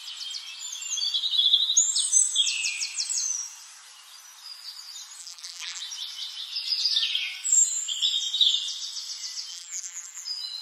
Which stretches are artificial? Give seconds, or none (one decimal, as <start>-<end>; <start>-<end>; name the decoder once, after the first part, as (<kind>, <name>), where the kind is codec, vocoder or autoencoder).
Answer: 5.2-5.8 (vocoder, BigVGAN v2); 9.5-10.2